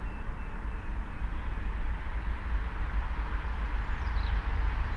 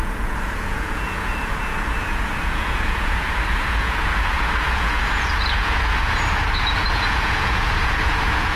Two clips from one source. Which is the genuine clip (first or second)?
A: first